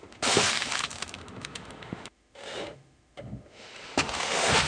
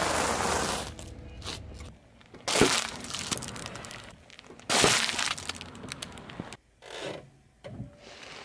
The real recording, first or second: second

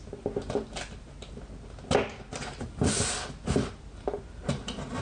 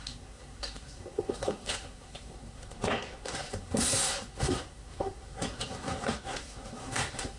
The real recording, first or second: first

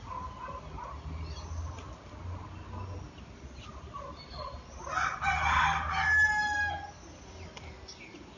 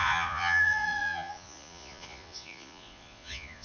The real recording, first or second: first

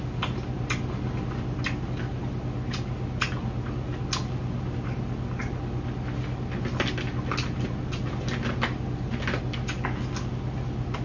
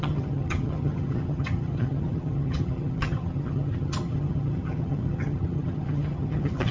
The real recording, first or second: first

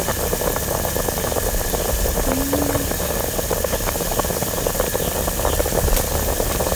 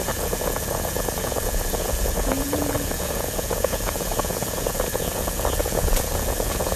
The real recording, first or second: first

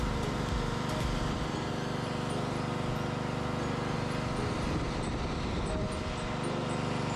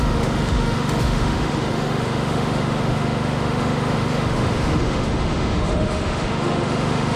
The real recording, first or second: first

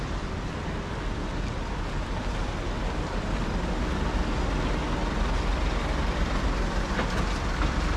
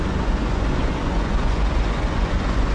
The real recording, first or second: first